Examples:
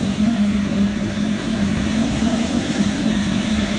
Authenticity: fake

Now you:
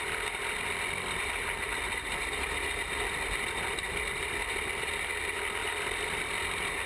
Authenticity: real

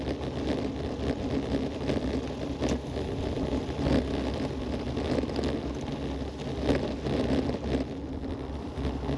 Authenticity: real